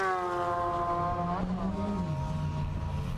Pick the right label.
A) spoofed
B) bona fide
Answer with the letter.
B